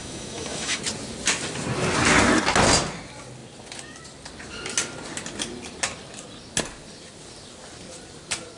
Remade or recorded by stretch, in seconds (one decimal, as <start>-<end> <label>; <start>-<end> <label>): 0.0-0.8 remade; 0.8-8.6 recorded